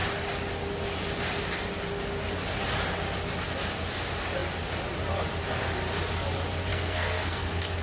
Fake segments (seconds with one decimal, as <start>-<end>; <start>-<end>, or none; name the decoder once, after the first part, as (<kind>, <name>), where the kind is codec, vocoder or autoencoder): 6.7-7.8 (codec, SNAC)